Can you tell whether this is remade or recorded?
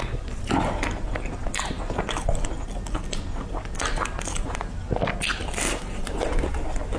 recorded